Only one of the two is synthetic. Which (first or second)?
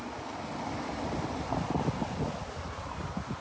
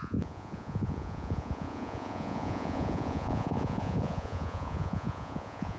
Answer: second